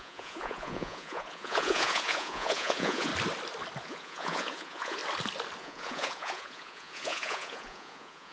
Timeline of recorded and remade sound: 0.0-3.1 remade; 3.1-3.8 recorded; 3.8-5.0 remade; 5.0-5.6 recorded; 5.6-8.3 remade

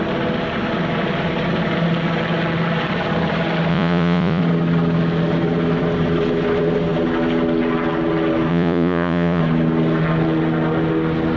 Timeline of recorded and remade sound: 0.0-3.7 recorded; 3.7-4.4 remade; 4.4-8.5 recorded; 8.5-9.4 remade; 9.4-11.4 recorded

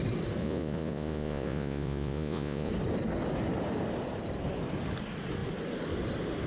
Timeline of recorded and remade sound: 0.0-0.4 recorded; 0.4-2.7 remade; 2.7-6.5 recorded

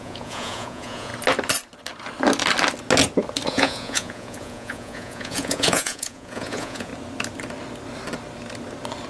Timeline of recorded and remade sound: 0.0-1.1 remade; 1.1-3.5 recorded; 3.5-6.9 remade; 6.9-9.1 recorded

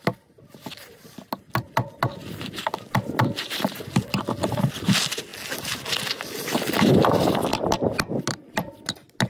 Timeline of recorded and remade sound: 0.0-9.3 recorded

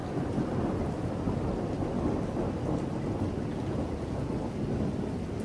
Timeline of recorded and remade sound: 0.0-3.5 recorded; 3.5-4.3 remade; 4.3-5.4 recorded